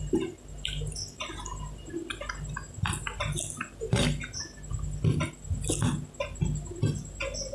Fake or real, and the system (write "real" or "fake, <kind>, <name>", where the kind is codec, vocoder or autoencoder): real